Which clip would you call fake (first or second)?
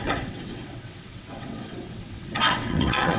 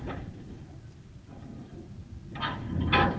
first